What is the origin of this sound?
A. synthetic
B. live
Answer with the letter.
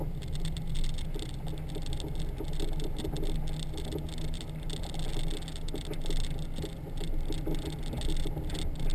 B